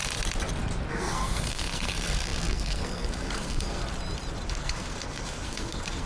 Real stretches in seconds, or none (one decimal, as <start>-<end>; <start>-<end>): 0.0-0.9; 3.8-4.5